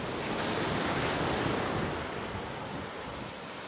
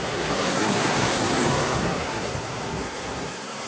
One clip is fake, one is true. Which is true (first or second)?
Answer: first